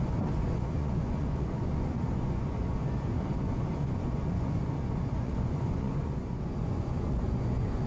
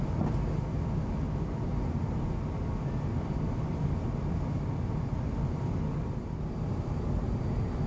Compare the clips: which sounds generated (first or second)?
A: first